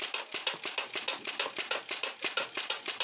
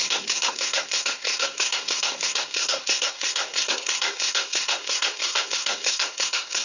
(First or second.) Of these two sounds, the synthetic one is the second